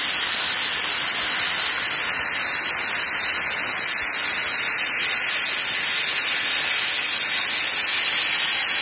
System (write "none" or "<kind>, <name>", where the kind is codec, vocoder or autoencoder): none